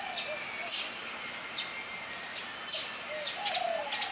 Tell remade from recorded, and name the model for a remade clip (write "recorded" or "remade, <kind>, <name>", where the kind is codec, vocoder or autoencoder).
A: recorded